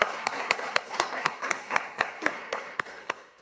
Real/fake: fake